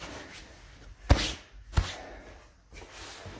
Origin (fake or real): real